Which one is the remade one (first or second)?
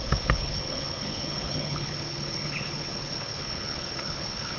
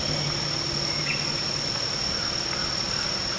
first